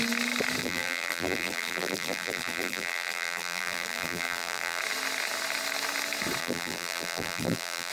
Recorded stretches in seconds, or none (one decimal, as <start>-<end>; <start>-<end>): 0.0-0.6; 4.8-6.4